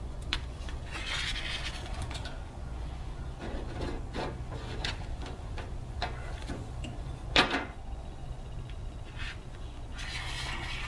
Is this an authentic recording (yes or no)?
no